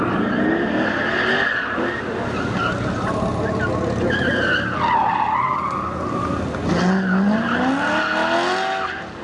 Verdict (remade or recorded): recorded